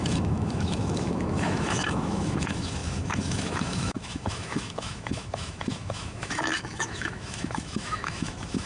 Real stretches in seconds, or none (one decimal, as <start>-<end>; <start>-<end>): none